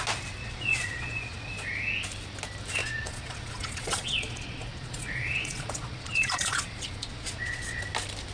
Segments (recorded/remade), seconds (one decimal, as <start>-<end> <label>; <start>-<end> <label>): 0.0-0.4 recorded; 0.4-1.5 remade; 1.5-2.8 recorded; 2.8-7.8 remade; 7.8-8.3 recorded